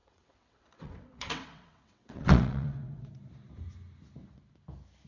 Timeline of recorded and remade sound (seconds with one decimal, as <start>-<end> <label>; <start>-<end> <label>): 0.0-3.1 remade; 3.1-5.1 recorded